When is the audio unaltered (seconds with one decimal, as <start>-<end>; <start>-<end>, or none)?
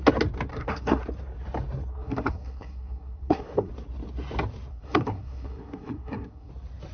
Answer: 0.0-0.5; 1.0-1.9; 3.7-4.7; 6.5-6.9